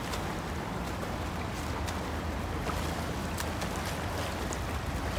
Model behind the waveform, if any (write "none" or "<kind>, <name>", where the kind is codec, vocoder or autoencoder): none